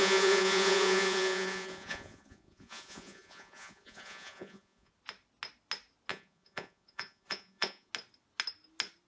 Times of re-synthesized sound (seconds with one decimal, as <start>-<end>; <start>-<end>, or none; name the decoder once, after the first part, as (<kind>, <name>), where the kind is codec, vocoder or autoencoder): 0.0-4.9 (vocoder, Vocos); 6.1-7.9